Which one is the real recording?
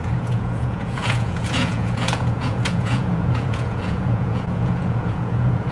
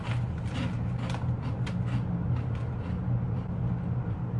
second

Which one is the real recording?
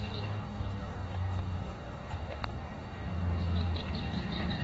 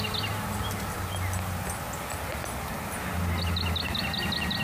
second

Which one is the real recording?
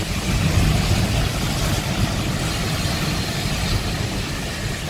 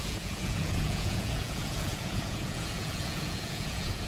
first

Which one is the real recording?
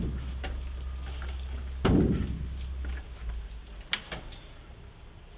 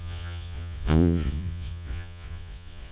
first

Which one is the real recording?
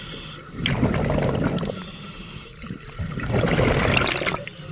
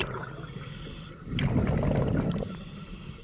first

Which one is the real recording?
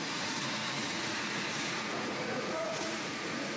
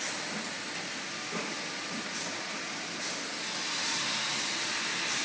second